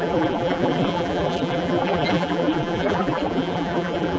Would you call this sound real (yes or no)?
no